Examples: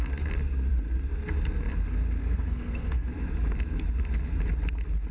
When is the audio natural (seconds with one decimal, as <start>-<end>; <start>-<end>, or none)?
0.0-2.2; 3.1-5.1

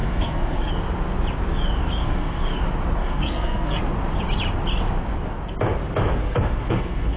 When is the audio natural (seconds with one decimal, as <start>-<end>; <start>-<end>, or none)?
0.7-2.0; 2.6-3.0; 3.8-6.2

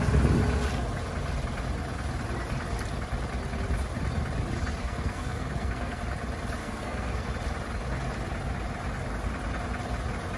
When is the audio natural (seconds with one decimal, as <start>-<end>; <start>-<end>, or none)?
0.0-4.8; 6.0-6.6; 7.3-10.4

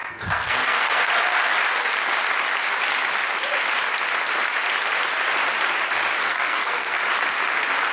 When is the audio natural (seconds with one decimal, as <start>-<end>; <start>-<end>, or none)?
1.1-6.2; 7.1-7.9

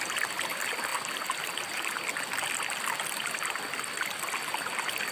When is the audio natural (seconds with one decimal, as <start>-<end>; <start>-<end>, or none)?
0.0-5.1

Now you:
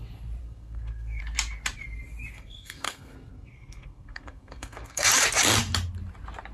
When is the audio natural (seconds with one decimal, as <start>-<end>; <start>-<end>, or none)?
0.0-0.4; 1.2-2.3; 5.1-6.5